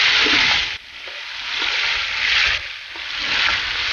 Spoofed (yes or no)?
no